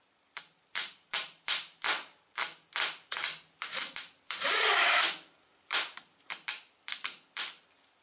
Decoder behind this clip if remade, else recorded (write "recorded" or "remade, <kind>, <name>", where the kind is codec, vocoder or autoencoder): remade, vocoder, BigVGAN v2